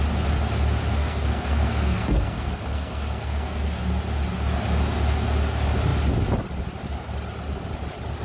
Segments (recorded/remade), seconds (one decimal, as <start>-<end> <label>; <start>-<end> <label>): 0.0-0.9 recorded; 0.9-3.8 remade; 3.8-8.2 recorded